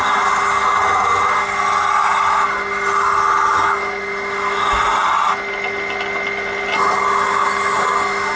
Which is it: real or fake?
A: real